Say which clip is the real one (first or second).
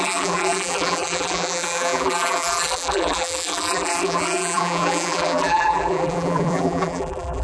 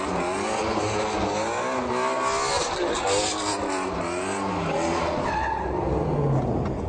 second